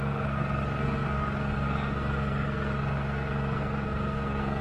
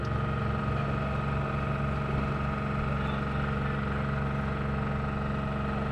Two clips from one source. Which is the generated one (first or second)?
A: first